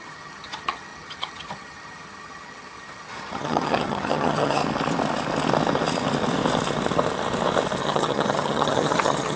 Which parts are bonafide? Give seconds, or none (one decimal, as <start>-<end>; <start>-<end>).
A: 4.6-7.8